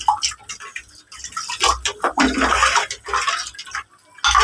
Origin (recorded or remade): recorded